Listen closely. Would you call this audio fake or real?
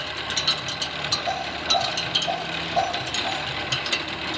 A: real